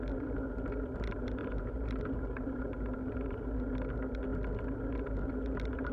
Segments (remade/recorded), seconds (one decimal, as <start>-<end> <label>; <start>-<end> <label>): 0.0-1.4 recorded; 1.4-3.4 remade; 3.4-5.9 recorded

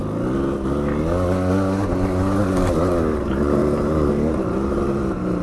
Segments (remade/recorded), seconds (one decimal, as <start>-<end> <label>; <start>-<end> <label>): 0.0-3.2 recorded; 3.2-5.4 remade

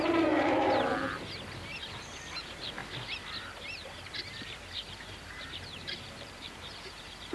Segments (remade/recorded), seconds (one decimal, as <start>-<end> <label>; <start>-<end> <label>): 0.0-0.9 remade; 0.9-1.8 recorded; 1.8-2.8 remade; 2.8-3.6 recorded; 3.6-7.3 remade

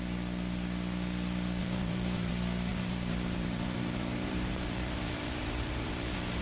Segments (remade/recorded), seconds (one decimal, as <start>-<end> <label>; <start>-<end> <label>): 0.0-1.6 recorded; 1.6-2.3 remade; 2.3-2.7 recorded; 2.7-6.4 remade

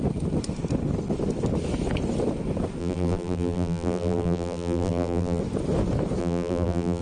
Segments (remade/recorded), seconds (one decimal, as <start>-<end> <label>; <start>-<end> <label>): 0.0-2.8 recorded; 2.8-5.4 remade; 5.4-6.2 recorded; 6.2-7.0 remade

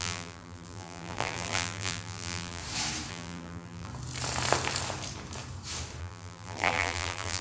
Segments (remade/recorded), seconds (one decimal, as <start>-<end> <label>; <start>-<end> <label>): 0.0-2.6 remade; 2.6-3.1 recorded; 3.1-3.9 remade; 3.9-6.0 recorded; 6.0-7.4 remade

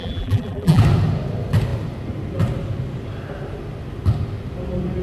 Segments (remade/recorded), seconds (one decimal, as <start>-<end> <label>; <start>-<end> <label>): 0.0-0.8 remade; 0.8-5.0 recorded

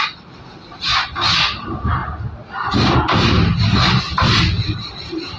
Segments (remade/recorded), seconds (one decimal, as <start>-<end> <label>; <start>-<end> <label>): 0.0-5.4 recorded